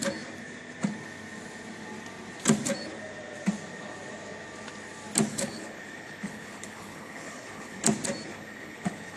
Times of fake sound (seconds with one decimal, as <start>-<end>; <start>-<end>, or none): 5.3-7.8; 8.3-9.2